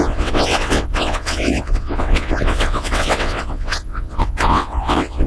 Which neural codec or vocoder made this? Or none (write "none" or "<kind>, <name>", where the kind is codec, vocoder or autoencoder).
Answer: vocoder, WaveNeXt